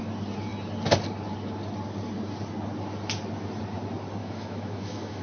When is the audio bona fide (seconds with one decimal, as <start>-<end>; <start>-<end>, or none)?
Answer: 0.0-4.2